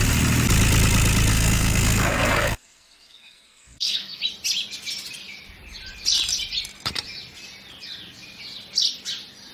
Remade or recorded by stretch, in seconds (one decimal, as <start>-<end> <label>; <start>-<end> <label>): 0.0-1.3 recorded; 1.3-4.2 remade; 4.2-9.5 recorded